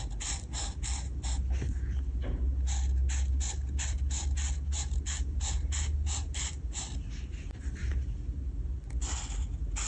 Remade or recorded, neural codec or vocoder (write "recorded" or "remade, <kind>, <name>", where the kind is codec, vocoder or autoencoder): recorded